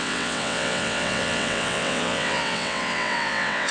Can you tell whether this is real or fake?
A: fake